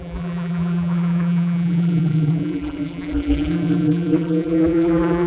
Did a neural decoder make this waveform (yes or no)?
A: yes